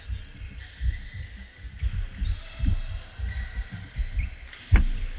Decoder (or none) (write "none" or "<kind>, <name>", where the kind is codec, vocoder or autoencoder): none